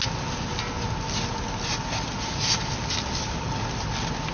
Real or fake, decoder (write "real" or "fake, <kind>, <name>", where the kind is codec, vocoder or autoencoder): real